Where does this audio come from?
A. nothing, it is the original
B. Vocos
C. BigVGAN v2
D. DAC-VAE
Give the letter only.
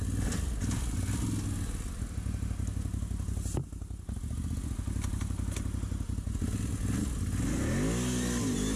A